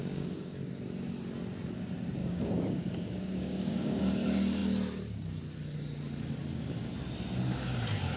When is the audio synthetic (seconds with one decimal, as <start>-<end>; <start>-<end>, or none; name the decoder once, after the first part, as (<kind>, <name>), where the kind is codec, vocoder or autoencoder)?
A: 0.0-0.7 (codec, DAC); 2.2-4.0